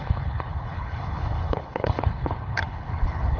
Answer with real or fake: fake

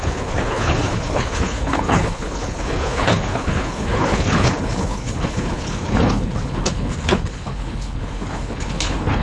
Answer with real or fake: fake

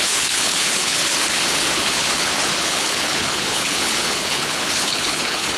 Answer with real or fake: fake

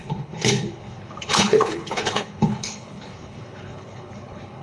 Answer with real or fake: fake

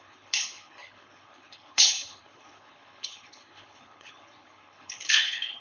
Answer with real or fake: fake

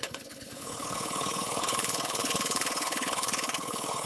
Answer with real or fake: fake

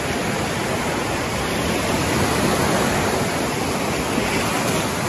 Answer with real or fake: real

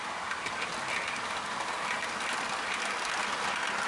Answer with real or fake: real